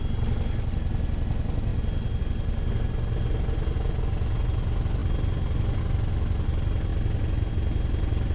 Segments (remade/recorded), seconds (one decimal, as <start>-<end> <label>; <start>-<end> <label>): 0.0-8.3 recorded